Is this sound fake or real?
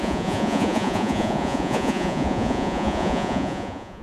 fake